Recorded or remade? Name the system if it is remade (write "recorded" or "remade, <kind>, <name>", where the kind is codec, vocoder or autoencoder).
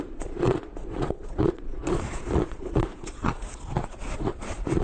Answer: remade, vocoder, Vocos